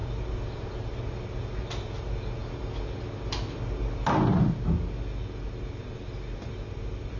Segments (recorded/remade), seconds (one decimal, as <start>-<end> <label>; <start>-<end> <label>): 0.0-7.2 recorded